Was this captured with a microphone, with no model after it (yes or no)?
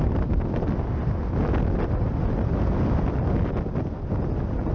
yes